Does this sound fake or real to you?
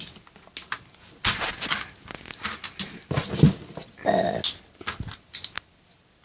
real